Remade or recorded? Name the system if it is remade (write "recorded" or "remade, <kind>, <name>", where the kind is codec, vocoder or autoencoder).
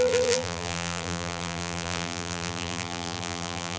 remade, vocoder, BigVGAN v2